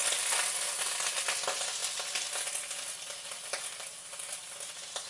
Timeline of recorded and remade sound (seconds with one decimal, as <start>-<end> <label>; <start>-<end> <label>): 0.0-5.1 recorded